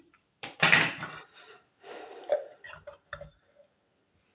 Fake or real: real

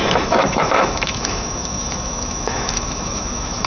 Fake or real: fake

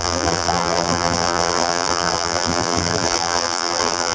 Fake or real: fake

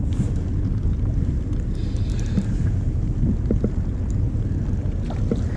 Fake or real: real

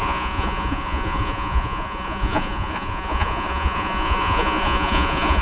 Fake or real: fake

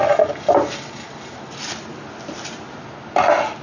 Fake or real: real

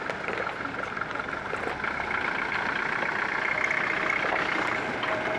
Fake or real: real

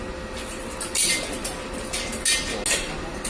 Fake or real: real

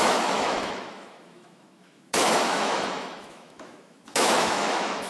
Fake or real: fake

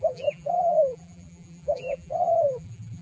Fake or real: fake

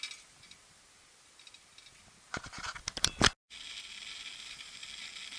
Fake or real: real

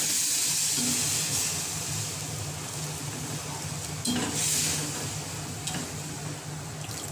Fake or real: real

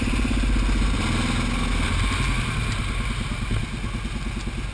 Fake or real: real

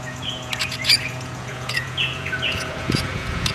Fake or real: fake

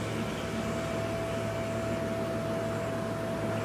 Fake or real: real